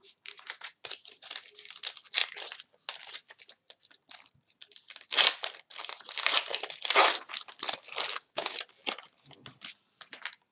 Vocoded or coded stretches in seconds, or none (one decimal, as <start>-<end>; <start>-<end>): 8.1-8.6